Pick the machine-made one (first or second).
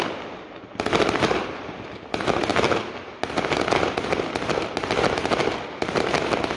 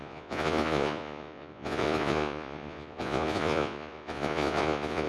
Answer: second